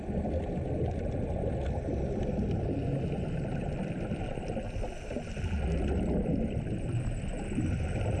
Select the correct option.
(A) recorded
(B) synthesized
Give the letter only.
A